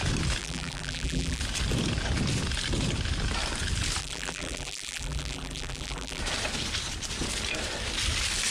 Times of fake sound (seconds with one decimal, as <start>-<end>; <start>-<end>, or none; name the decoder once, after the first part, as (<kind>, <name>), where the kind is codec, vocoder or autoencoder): 0.4-1.4 (vocoder, BigVGAN v2); 4.0-6.2